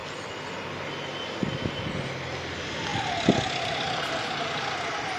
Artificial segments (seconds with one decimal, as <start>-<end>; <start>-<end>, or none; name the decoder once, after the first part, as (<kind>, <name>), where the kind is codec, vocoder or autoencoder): none